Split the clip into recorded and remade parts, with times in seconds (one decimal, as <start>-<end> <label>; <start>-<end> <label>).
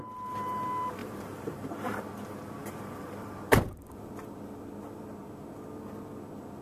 0.0-1.0 recorded; 1.0-2.0 remade; 2.0-2.6 recorded; 2.6-3.7 remade; 3.7-6.6 recorded